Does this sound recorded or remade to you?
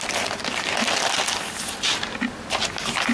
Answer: recorded